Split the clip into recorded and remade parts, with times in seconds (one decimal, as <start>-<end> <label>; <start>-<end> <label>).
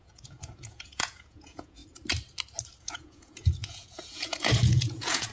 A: 0.0-1.8 remade; 1.8-2.8 recorded; 2.8-5.3 remade